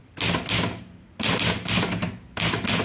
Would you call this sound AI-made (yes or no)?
no